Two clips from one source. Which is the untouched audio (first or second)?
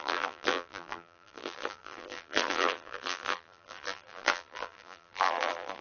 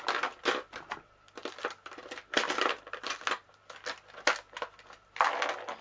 second